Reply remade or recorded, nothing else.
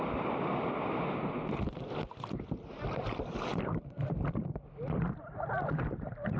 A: recorded